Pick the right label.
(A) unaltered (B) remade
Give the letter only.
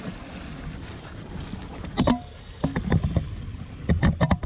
A